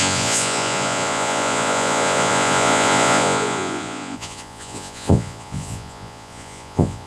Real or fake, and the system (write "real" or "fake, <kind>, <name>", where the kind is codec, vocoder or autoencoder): fake, vocoder, Vocos